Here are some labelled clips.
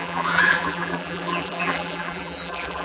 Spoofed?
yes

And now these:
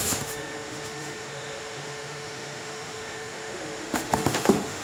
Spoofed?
yes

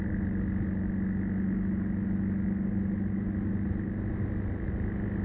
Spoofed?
no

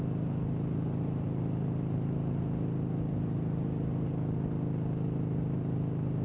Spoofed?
no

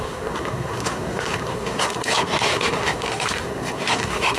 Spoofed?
yes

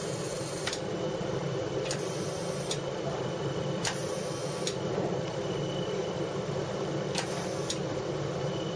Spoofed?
yes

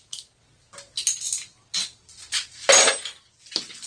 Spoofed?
no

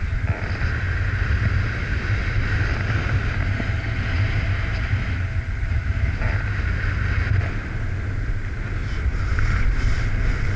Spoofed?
no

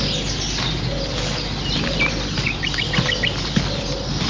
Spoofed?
no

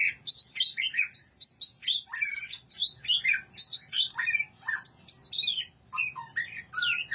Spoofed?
no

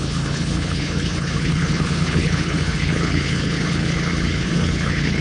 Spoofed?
yes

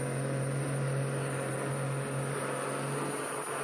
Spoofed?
no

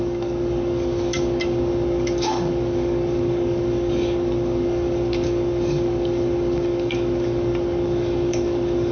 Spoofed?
yes